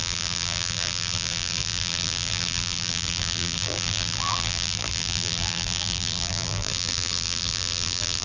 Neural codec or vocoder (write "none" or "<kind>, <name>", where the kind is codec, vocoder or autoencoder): vocoder, BigVGAN v2